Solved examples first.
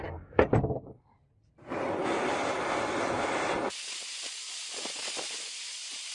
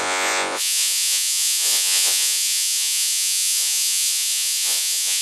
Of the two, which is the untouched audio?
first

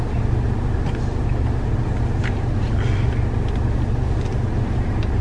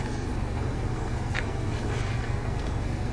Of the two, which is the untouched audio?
first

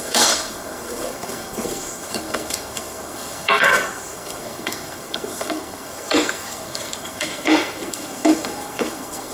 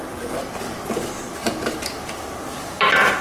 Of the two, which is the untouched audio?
second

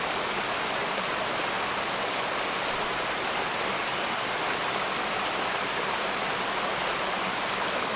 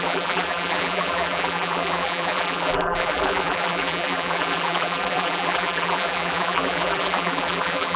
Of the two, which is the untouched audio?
first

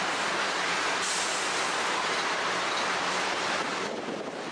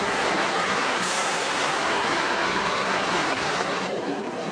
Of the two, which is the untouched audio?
first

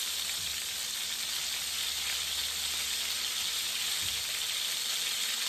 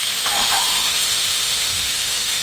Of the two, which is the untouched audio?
first